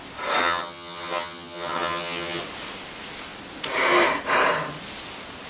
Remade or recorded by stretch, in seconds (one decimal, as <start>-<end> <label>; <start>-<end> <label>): 0.0-0.4 recorded; 0.4-2.4 remade; 2.4-5.5 recorded